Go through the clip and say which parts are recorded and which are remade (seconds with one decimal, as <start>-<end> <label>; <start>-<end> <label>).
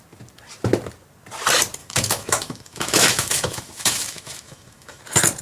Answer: 0.0-1.8 recorded; 1.8-5.0 remade; 5.0-5.4 recorded